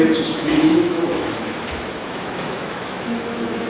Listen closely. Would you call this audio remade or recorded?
remade